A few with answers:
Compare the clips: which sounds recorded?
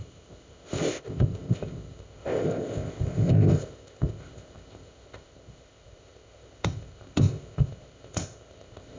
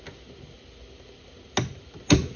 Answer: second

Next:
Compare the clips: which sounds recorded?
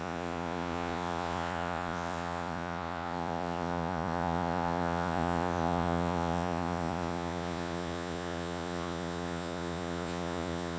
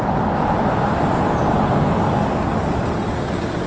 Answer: second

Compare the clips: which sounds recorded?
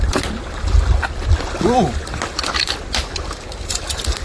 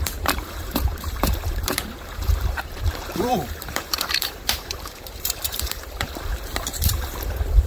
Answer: first